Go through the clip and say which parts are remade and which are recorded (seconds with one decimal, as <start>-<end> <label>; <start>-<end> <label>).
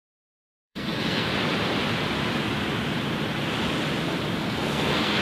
0.0-1.3 remade; 1.3-4.4 recorded; 4.4-5.2 remade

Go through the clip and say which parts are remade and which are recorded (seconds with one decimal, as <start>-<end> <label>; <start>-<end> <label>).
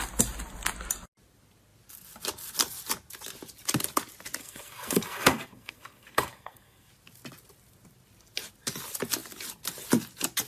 0.0-4.4 recorded; 4.4-6.9 remade; 6.9-10.5 recorded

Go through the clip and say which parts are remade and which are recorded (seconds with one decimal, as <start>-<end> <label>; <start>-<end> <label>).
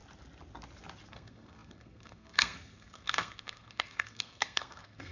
0.0-1.1 recorded; 1.1-5.1 remade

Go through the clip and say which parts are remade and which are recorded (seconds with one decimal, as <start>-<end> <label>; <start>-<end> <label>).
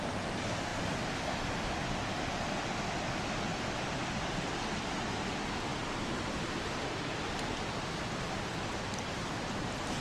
0.0-10.0 recorded